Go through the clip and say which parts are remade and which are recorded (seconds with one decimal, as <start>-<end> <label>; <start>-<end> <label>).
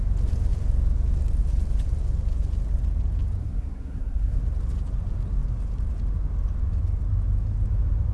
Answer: 0.0-3.4 recorded; 3.4-4.4 remade; 4.4-8.1 recorded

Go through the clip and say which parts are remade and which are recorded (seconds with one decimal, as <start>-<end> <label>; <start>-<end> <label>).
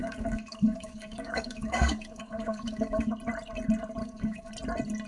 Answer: 0.0-3.1 remade; 3.1-4.0 recorded; 4.0-4.5 remade; 4.5-5.1 recorded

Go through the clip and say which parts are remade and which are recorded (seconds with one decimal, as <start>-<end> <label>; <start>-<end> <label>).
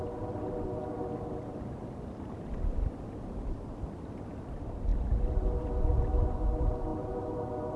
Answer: 0.0-7.8 recorded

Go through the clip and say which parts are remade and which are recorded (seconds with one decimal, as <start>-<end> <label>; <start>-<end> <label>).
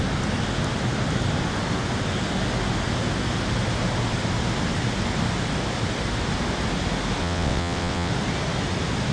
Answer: 0.0-7.2 recorded; 7.2-8.1 remade; 8.1-9.1 recorded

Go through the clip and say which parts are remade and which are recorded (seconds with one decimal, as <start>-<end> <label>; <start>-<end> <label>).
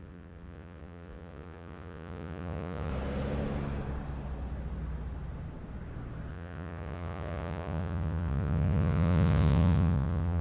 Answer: 0.0-2.9 remade; 2.9-6.3 recorded; 6.3-10.4 remade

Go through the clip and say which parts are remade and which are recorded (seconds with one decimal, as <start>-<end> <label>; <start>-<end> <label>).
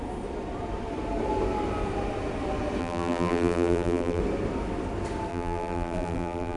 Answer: 0.0-2.8 recorded; 2.8-4.2 remade; 4.2-5.3 recorded; 5.3-6.6 remade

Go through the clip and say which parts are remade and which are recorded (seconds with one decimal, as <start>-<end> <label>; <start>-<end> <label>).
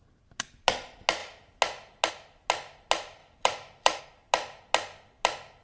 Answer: 0.0-3.2 recorded; 3.2-4.0 remade; 4.0-5.6 recorded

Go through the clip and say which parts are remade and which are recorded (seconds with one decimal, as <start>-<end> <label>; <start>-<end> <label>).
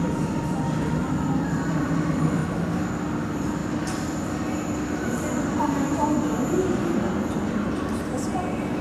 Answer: 0.0-2.4 remade; 2.4-3.0 recorded; 3.0-3.6 remade; 3.6-8.8 recorded